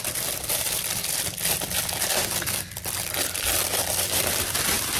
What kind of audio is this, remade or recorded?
remade